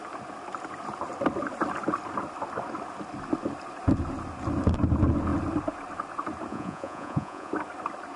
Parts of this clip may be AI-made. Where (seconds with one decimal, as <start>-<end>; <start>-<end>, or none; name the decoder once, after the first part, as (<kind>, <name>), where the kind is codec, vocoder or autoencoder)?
6.5-7.5 (vocoder, Vocos)

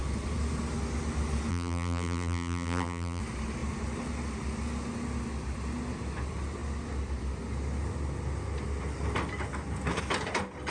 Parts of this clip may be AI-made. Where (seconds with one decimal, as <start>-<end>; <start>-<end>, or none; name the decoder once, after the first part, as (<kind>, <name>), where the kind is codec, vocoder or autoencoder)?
1.5-3.2 (vocoder, BigVGAN v2)

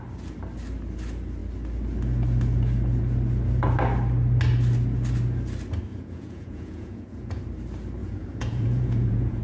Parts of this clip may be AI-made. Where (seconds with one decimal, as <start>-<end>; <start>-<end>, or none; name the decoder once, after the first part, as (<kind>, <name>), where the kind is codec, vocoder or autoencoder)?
5.9-7.4 (vocoder, Vocos); 8.0-9.4

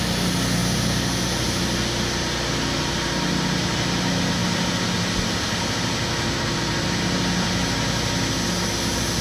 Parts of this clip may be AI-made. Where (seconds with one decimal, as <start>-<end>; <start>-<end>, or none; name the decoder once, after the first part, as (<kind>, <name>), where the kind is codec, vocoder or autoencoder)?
none

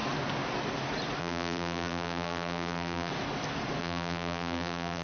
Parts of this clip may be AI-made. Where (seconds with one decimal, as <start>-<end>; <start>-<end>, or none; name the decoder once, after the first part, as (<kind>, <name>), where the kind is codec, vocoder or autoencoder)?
1.2-3.1 (vocoder, BigVGAN v2); 3.8-5.0

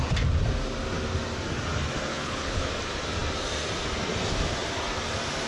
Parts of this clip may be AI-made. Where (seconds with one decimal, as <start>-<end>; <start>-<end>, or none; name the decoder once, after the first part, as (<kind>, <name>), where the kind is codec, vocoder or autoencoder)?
2.1-2.7 (codec, HILCodec)

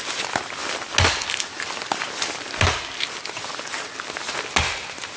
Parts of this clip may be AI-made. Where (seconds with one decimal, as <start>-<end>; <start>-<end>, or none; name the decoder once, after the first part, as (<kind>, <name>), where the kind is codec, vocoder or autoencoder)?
none